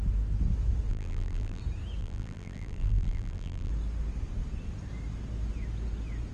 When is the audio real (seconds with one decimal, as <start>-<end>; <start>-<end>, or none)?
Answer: 0.0-0.9; 1.6-2.0; 3.7-6.3